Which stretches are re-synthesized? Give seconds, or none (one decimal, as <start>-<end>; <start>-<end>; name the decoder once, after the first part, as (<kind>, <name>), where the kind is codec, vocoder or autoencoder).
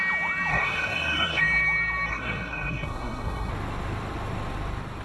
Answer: 0.5-1.4 (codec, SNAC); 2.1-3.5